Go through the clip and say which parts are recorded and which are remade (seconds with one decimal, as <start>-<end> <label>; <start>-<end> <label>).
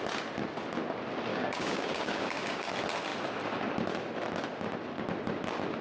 0.0-1.3 recorded; 1.3-2.7 remade; 2.7-5.8 recorded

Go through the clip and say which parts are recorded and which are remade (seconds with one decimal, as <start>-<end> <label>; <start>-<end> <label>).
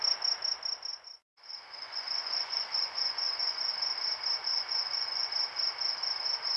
0.0-0.9 recorded; 0.9-3.6 remade; 3.6-4.5 recorded; 4.5-5.3 remade; 5.3-6.6 recorded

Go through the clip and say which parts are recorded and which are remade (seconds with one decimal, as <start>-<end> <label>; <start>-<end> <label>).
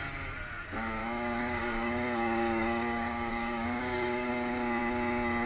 0.0-1.0 recorded; 1.0-4.3 remade; 4.3-5.5 recorded